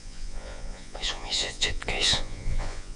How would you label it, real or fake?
fake